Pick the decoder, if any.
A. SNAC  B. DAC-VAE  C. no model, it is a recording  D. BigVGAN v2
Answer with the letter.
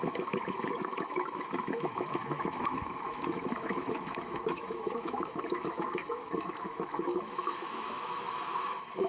B